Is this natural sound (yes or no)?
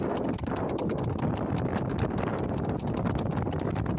yes